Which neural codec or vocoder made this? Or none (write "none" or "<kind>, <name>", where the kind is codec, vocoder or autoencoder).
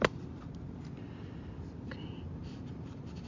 none